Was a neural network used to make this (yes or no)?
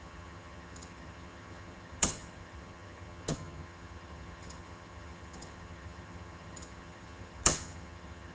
yes